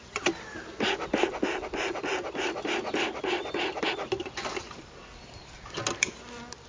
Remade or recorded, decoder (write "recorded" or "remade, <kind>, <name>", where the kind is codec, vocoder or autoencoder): recorded